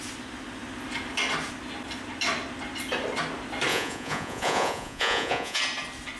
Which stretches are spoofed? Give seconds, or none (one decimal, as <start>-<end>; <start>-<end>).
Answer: 3.7-5.6